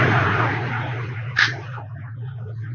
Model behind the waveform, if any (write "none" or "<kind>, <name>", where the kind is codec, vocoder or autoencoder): vocoder, Vocos